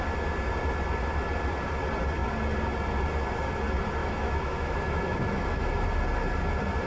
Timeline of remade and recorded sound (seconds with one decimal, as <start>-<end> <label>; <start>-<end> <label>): 0.0-4.0 recorded; 4.0-5.7 remade; 5.7-6.9 recorded